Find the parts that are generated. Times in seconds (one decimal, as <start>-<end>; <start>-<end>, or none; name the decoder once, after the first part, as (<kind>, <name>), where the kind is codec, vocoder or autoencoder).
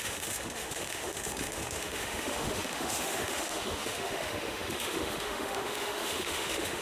0.0-6.8 (autoencoder, DAC-VAE)